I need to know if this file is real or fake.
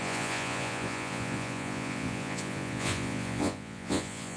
fake